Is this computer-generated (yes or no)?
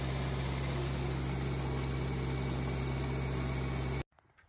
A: no